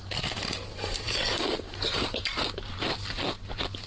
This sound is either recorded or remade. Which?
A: remade